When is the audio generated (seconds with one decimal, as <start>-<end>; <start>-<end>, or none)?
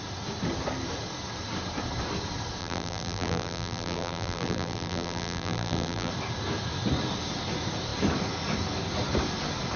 2.6-6.1